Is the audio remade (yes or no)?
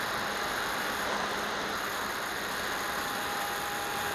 yes